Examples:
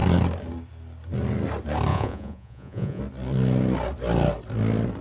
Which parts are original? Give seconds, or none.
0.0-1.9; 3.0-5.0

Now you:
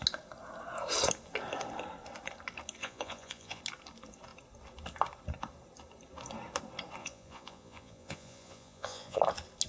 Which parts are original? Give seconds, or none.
0.0-2.8; 3.6-7.0; 9.2-9.7

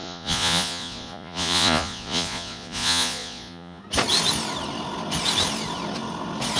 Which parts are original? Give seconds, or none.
3.8-6.6

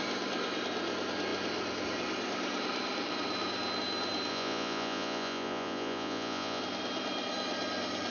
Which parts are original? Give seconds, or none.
0.0-4.3; 6.6-8.1